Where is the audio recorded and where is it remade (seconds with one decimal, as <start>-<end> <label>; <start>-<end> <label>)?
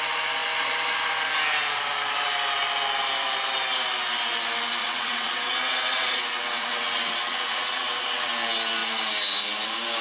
0.0-4.8 recorded; 4.8-8.3 remade; 8.3-10.0 recorded